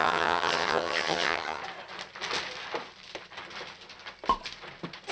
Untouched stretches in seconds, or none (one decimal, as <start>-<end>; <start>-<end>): 1.6-5.1